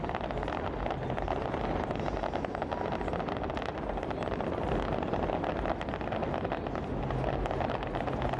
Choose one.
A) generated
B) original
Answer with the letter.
B